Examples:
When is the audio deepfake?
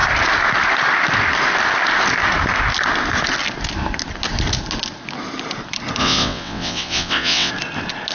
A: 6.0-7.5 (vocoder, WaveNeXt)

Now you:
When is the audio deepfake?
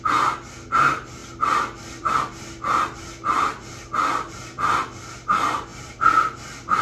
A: 1.2-4.7 (vocoder, BigVGAN v2); 5.7-6.8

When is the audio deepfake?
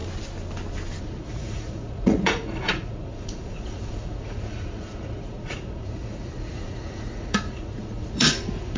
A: 1.0-8.8 (vocoder, Vocos)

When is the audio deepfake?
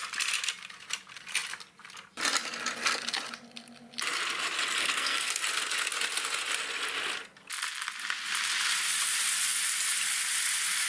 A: 4.8-5.4 (codec, SNAC)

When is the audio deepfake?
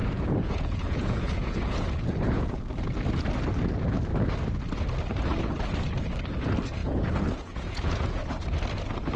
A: 0.0-2.6 (vocoder, Vocos); 6.8-8.2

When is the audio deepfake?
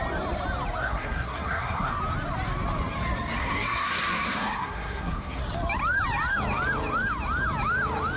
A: 0.8-2.0 (codec, SNAC); 3.4-5.4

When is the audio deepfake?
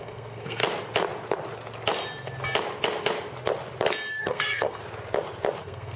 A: 0.0-0.6 (codec, SNAC); 4.2-4.8; 5.6-6.0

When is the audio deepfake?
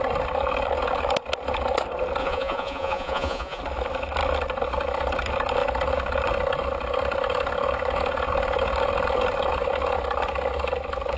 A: 2.2-3.6 (vocoder, Vocos)